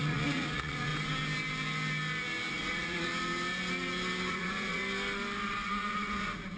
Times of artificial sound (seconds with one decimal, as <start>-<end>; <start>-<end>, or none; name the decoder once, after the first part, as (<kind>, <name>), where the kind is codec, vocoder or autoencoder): 0.0-0.9 (vocoder, Vocos); 2.5-3.1; 4.3-4.8; 5.5-6.6